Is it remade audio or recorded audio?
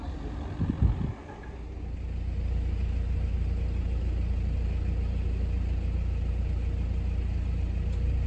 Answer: recorded